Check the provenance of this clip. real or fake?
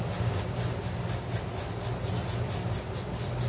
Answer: real